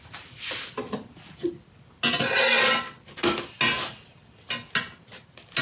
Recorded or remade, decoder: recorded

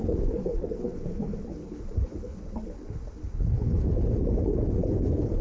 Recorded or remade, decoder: remade, codec, HILCodec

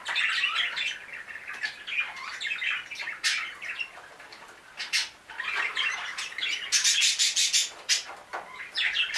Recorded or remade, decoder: recorded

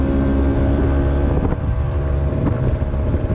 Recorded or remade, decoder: recorded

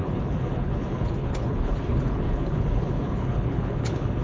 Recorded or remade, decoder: remade, codec, HILCodec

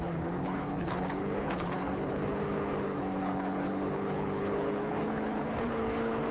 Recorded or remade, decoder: remade, codec, HILCodec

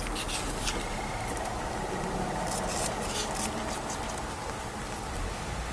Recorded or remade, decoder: recorded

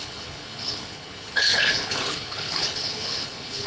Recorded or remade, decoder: remade, codec, HILCodec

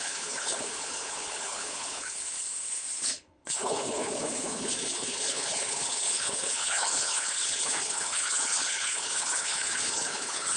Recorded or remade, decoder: remade, codec, HILCodec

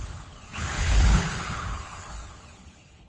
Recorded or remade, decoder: remade, codec, HILCodec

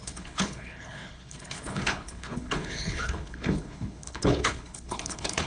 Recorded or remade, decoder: remade, codec, HILCodec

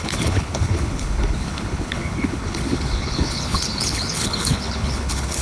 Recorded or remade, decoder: remade, codec, HILCodec